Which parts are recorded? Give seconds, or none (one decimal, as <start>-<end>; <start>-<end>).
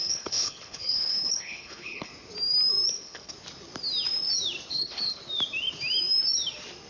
2.1-2.9; 3.3-4.7; 5.2-6.9